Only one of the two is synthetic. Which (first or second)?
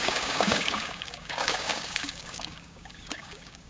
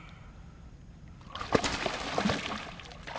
first